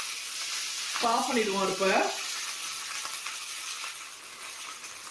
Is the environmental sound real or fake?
real